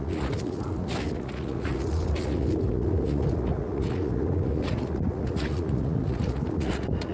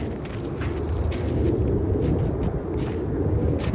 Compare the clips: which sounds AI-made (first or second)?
first